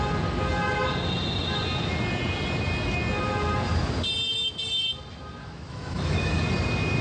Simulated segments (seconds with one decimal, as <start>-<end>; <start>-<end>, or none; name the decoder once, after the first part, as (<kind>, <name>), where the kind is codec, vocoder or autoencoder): 5.4-6.4 (autoencoder, DAC-VAE)